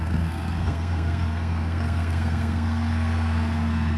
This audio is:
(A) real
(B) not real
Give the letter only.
B